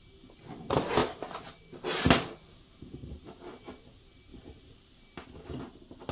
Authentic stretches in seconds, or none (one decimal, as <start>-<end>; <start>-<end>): 0.0-3.0; 3.8-6.1